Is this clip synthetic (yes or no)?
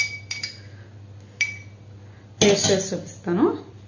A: no